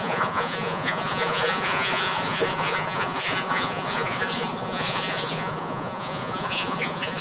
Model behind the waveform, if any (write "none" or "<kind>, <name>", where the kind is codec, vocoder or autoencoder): vocoder, Vocos